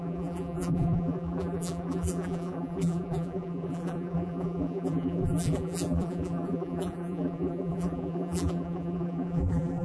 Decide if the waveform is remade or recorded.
remade